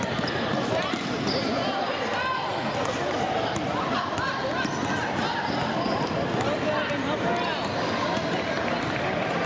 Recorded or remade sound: recorded